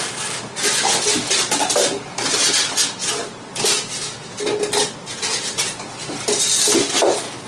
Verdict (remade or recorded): recorded